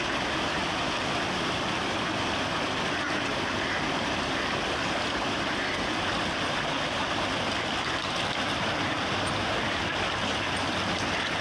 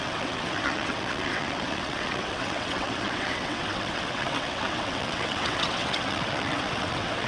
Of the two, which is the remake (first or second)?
second